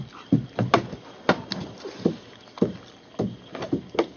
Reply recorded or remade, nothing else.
recorded